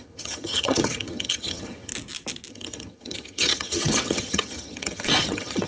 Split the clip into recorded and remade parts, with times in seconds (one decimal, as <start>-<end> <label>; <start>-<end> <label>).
0.0-1.9 remade; 1.9-2.5 recorded; 2.5-5.7 remade